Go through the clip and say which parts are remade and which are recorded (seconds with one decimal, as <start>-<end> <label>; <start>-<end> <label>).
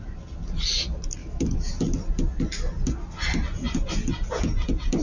0.0-1.2 recorded; 1.2-1.7 remade; 1.7-5.0 recorded